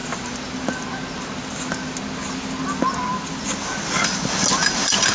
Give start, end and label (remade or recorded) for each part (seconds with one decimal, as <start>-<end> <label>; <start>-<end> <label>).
0.0-5.1 recorded